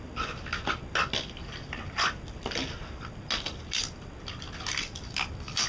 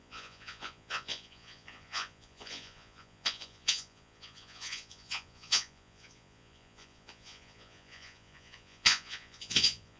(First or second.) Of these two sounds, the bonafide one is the first